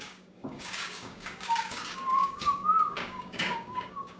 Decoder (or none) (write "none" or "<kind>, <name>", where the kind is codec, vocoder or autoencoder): codec, DAC